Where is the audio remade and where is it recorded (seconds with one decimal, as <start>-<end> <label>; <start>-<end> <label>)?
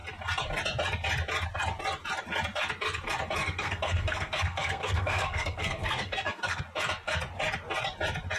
0.0-3.4 recorded; 3.4-6.6 remade; 6.6-8.4 recorded